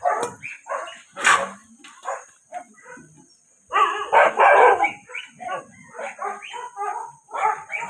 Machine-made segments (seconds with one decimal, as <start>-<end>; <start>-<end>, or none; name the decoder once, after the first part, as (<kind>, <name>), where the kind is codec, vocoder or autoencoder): none